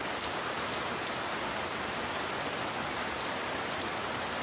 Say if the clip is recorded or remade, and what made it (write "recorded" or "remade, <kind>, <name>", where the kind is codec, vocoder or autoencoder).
recorded